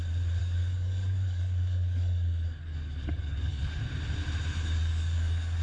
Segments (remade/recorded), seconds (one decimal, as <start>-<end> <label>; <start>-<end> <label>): 0.0-0.4 recorded; 0.4-3.8 remade; 3.8-4.7 recorded; 4.7-5.6 remade